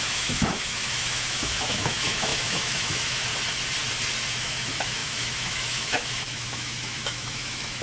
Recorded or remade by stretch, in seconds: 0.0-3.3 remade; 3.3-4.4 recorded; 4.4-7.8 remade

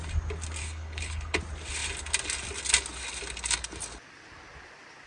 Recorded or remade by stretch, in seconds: 0.0-0.6 recorded; 0.6-1.4 remade; 1.4-5.1 recorded

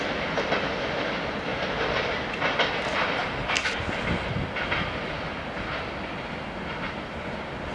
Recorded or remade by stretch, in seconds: 0.0-7.7 recorded

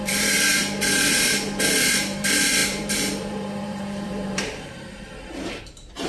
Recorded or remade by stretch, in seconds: 0.0-0.6 remade; 0.6-1.9 recorded; 1.9-6.1 remade

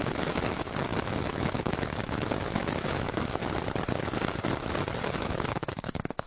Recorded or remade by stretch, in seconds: 0.0-3.4 remade; 3.4-5.2 recorded; 5.2-6.3 remade

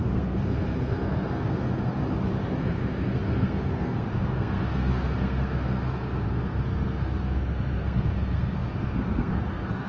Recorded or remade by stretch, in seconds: 0.0-2.0 remade; 2.0-2.6 recorded; 2.6-9.9 remade

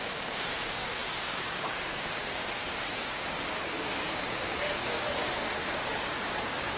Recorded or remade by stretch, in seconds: 0.0-6.8 remade

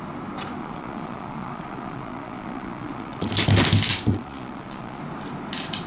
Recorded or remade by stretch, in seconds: 0.0-0.6 recorded; 0.6-3.3 remade; 3.3-4.1 recorded; 4.1-5.0 remade; 5.0-5.9 recorded